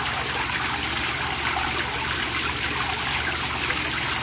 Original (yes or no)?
yes